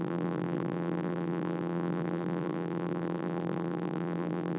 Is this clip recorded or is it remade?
remade